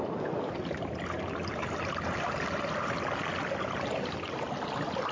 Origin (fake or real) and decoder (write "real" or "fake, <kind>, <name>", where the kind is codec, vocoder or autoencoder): real